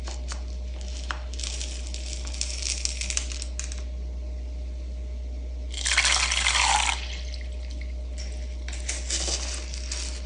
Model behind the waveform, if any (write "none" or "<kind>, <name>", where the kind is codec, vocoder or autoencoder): none